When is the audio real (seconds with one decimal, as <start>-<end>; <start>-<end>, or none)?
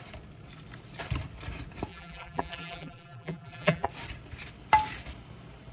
0.0-1.9; 3.9-5.7